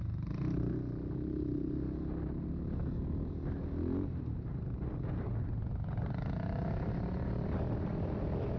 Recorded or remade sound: recorded